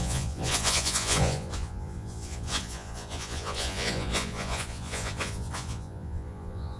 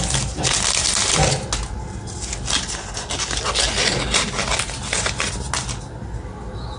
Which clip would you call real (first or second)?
second